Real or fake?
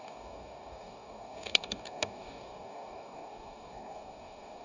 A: fake